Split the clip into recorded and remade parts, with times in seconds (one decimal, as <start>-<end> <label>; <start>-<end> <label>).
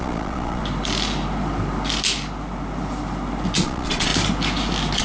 0.0-0.6 remade; 0.6-3.6 recorded; 3.6-4.1 remade; 4.1-5.0 recorded